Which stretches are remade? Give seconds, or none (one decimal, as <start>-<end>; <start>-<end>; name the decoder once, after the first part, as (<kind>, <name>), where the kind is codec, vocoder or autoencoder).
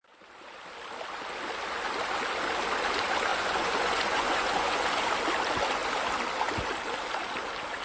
3.3-5.1 (vocoder, Vocos)